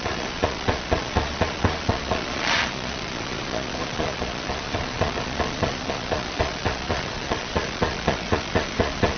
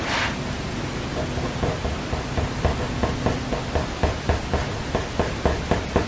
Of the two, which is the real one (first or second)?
second